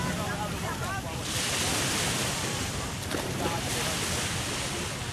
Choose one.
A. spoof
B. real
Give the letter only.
B